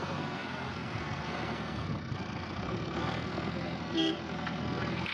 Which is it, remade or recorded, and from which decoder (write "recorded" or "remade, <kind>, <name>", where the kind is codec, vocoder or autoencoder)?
remade, codec, SNAC